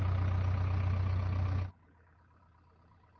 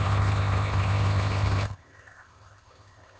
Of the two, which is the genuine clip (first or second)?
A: first